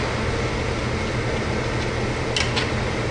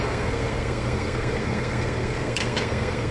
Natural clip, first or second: first